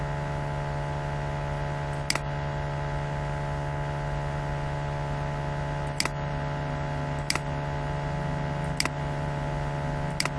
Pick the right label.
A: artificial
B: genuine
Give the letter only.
B